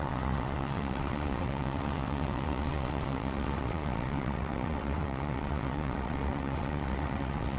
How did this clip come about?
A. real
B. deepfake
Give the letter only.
B